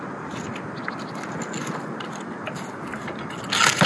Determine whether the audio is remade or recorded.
recorded